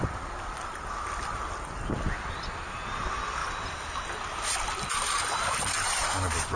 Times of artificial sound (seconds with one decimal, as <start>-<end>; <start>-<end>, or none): none